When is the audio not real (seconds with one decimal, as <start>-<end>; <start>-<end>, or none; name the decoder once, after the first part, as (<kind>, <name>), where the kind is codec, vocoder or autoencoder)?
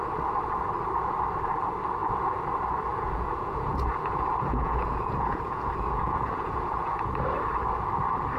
2.0-2.5 (vocoder, Vocos); 2.9-7.1